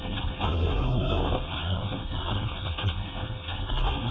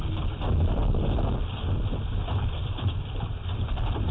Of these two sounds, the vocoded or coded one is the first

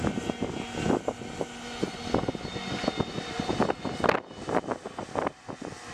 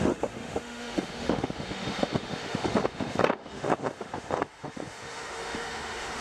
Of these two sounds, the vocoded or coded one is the second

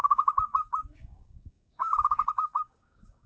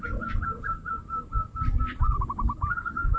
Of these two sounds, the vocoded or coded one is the first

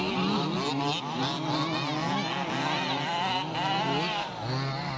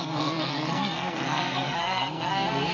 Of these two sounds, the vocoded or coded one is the second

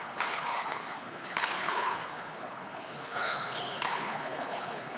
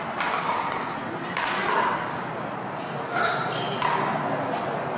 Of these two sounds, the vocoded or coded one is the first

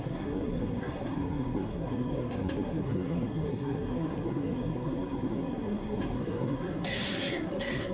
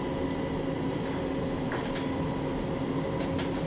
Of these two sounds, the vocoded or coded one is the first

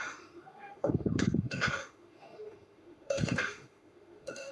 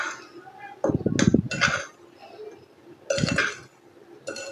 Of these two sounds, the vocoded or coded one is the first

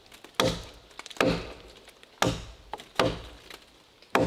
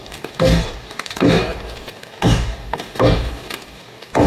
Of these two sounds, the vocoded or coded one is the second